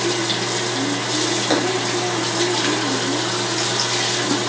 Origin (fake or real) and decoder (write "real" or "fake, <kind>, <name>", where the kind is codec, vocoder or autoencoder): real